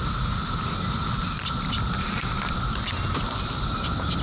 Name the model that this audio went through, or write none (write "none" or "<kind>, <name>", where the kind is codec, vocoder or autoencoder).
none